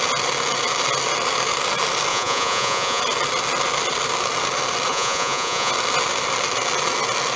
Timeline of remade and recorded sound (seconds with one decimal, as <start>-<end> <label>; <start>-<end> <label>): 0.0-2.1 recorded; 2.1-3.0 remade; 3.0-4.9 recorded; 4.9-5.7 remade; 5.7-7.4 recorded